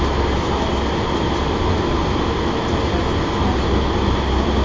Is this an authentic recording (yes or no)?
yes